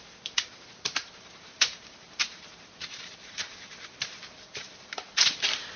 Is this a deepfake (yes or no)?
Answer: yes